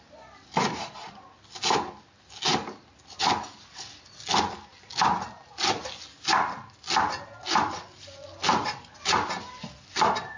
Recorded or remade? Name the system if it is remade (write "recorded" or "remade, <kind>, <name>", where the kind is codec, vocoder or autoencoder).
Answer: recorded